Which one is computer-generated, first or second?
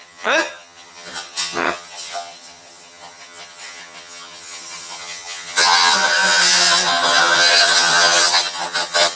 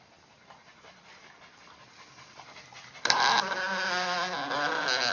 first